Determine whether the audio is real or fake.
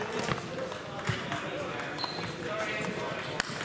real